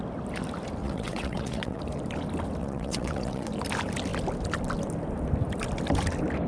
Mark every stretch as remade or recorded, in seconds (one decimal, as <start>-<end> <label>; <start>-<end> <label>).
0.0-0.8 recorded; 0.8-1.8 remade; 1.8-2.6 recorded; 2.6-3.5 remade; 3.5-6.5 recorded